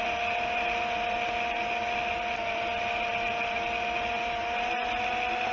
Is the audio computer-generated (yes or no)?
no